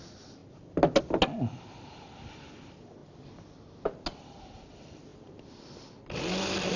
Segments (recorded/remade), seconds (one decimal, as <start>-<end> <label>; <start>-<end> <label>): 0.0-6.8 recorded